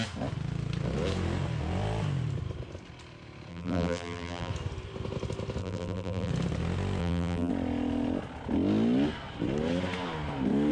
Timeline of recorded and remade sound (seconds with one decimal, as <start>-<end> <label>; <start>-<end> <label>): 0.0-3.5 recorded; 3.5-4.5 remade; 4.5-5.6 recorded; 5.6-6.3 remade; 6.3-7.0 recorded; 7.0-7.5 remade; 7.5-10.7 recorded